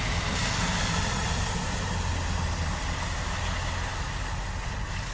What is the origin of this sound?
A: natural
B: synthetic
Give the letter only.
A